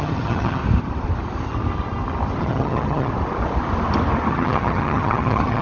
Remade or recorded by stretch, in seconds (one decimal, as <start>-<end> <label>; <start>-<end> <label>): 0.0-0.6 remade; 0.6-2.4 recorded; 2.4-3.1 remade; 3.1-4.3 recorded; 4.3-5.6 remade